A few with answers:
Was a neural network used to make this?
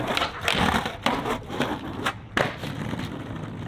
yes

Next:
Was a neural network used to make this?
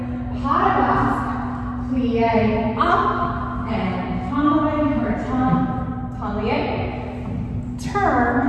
no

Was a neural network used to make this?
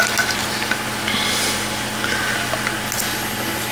no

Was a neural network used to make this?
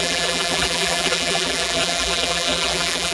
yes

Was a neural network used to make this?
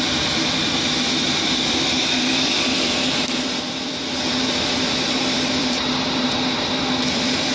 yes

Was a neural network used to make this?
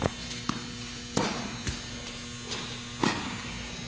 no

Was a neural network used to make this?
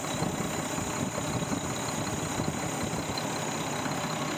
no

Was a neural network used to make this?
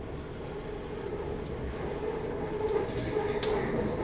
no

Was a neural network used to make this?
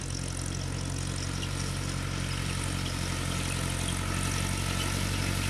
no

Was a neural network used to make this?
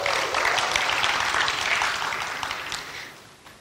yes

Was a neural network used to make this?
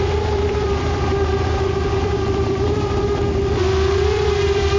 yes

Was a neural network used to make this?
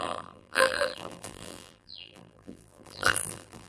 yes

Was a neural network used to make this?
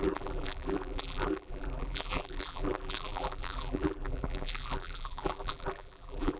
yes